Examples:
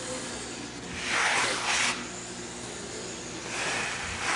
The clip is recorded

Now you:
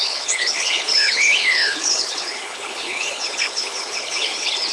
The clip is remade